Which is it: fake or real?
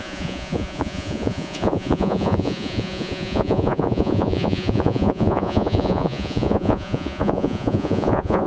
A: fake